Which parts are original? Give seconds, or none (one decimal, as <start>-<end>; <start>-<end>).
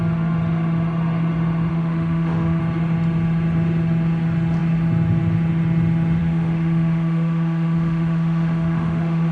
0.0-1.7; 2.6-6.2